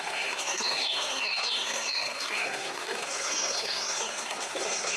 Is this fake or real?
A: fake